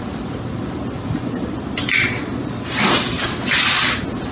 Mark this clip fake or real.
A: real